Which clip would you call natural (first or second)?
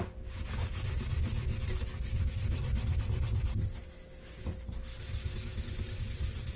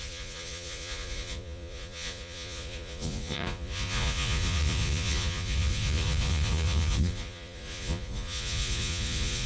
first